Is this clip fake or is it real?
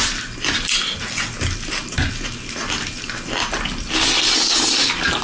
real